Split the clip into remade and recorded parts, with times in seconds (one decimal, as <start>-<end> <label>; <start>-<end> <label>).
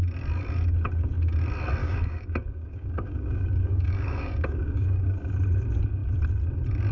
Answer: 0.0-1.8 recorded; 1.8-5.3 remade; 5.3-6.9 recorded